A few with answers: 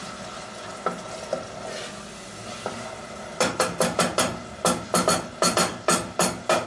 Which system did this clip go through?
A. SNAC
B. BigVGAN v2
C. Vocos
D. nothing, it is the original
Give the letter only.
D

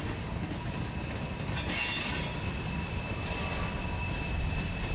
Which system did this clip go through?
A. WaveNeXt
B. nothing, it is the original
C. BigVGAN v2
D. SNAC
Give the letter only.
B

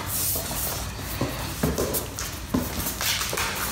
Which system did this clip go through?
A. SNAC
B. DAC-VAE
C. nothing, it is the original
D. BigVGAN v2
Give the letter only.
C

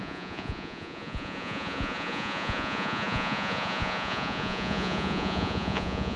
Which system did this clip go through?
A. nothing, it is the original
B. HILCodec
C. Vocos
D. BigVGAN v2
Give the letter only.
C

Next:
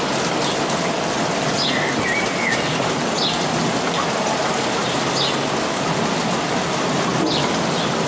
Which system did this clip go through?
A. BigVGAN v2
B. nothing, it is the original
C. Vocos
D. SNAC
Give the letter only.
B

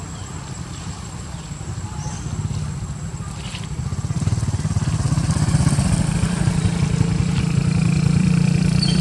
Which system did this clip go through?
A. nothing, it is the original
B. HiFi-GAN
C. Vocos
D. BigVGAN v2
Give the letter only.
D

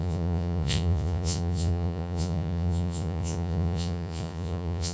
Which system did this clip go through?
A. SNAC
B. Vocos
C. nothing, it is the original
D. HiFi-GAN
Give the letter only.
B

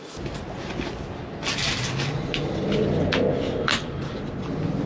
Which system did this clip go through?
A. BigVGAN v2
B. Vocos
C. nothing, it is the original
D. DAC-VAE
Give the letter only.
C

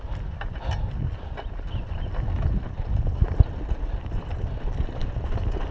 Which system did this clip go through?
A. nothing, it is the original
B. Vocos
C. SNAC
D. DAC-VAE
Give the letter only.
A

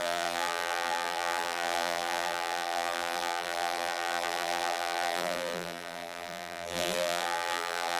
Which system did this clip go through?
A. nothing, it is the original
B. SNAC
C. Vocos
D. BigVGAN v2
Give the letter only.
D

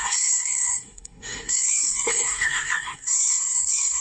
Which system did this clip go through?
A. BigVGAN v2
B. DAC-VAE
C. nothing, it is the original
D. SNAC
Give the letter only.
D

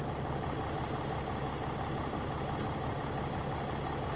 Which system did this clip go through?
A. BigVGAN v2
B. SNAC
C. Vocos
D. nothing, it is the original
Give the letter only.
D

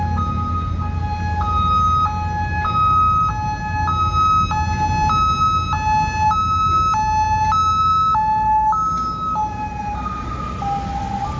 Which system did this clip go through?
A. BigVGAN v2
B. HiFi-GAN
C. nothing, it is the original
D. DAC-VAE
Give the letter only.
C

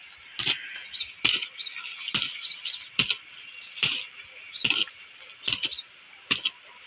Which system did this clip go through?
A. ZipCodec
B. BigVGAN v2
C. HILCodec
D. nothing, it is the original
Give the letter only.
D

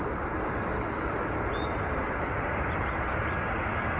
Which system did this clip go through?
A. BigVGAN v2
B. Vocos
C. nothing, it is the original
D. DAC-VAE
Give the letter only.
C